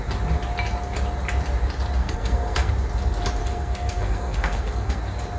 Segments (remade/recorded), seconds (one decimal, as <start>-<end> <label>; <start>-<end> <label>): 0.0-2.0 recorded; 2.0-2.7 remade; 2.7-3.4 recorded; 3.4-5.0 remade; 5.0-5.4 recorded